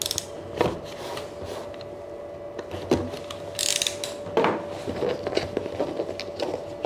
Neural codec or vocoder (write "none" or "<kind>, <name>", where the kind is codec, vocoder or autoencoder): none